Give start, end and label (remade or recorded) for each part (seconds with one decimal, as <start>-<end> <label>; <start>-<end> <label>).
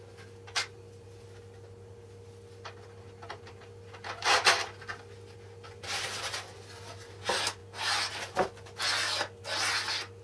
0.0-10.2 recorded